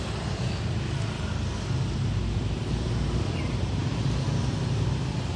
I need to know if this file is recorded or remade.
recorded